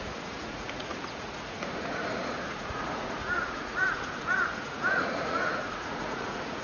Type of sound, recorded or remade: remade